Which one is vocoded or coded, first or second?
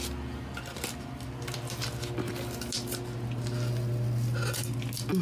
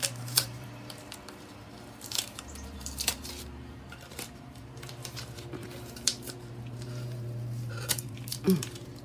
second